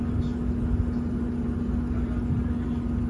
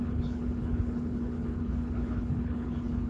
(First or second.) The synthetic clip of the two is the second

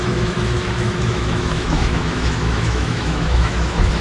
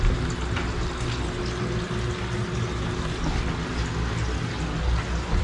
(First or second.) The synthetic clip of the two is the first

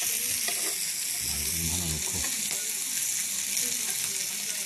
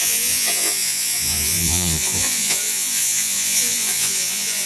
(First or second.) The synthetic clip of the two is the second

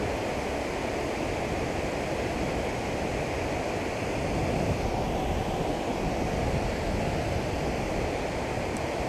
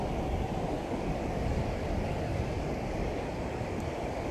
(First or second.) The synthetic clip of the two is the second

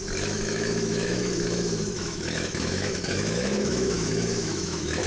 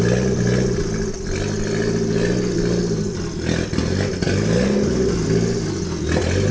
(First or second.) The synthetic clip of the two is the first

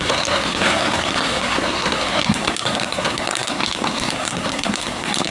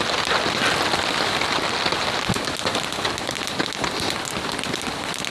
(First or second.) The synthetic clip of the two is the first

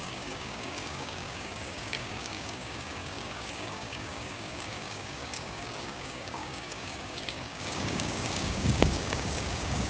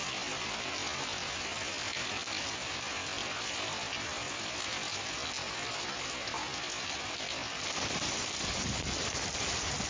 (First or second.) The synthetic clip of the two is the first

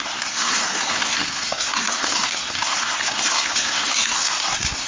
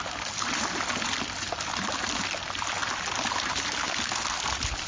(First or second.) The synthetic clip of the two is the first